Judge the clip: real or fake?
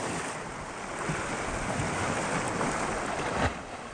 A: real